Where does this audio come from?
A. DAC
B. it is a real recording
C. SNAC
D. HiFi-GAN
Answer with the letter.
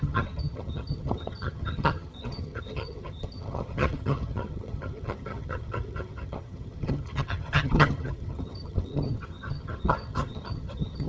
D